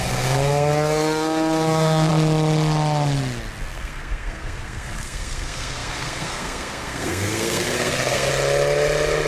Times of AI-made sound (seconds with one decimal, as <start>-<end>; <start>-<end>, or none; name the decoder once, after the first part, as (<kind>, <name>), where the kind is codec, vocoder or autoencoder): 0.0-2.1 (codec, SNAC); 3.7-8.3